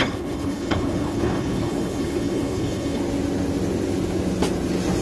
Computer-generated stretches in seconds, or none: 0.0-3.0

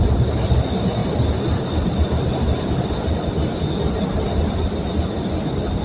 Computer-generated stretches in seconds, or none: 1.0-3.6

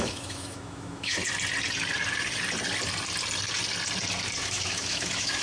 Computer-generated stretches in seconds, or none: 0.0-1.2; 4.4-5.4

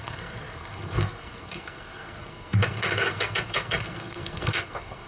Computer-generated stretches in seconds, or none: 0.0-5.1

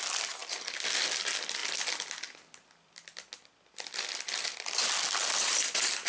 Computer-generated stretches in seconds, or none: none

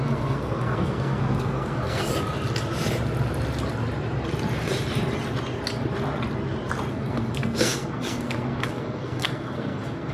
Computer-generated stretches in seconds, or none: 0.0-2.1; 6.9-10.1

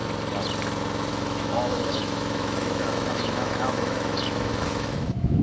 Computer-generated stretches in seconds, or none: 1.1-5.4